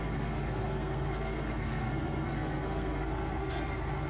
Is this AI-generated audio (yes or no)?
yes